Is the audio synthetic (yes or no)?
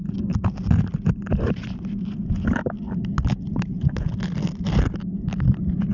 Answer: no